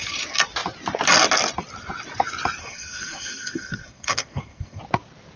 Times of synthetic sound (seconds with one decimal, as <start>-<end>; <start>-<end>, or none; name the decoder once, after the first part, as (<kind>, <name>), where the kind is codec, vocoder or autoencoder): 2.6-4.8 (codec, SNAC)